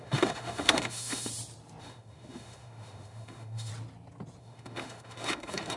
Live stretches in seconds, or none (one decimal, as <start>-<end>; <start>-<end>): 1.3-1.8; 3.7-4.4